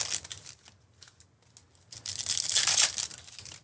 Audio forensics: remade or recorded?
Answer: recorded